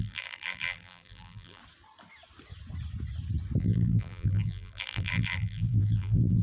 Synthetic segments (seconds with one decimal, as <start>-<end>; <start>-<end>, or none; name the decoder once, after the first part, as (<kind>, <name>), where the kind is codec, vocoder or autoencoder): 0.0-1.6 (vocoder, BigVGAN v2); 3.6-6.4